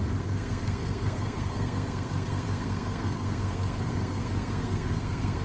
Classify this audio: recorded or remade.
remade